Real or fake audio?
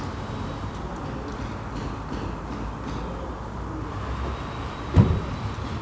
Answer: real